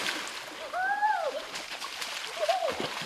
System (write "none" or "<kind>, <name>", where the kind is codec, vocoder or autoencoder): none